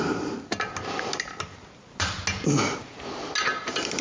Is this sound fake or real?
real